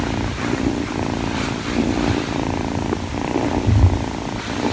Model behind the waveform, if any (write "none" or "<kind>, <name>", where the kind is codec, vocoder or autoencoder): none